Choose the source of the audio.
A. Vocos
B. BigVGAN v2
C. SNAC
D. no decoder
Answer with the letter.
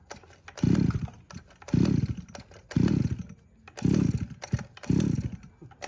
D